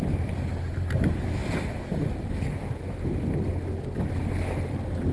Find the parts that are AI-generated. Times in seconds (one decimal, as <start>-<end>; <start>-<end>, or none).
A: none